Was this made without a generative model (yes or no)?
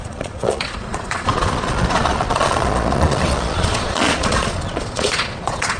no